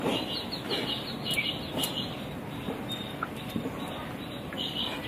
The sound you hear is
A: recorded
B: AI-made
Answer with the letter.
A